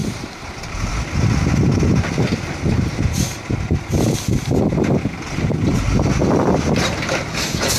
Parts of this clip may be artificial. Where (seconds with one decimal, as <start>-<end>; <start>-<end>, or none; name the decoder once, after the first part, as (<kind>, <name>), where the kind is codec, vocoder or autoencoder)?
none